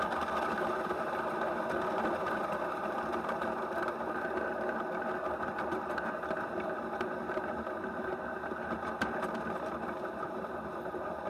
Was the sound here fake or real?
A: real